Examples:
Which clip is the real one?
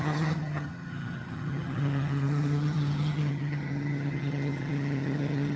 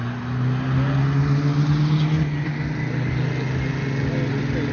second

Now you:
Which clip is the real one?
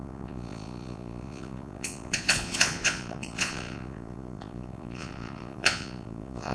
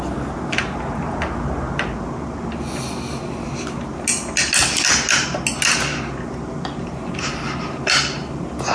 second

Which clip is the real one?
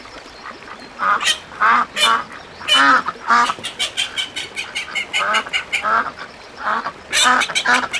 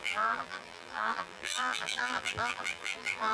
first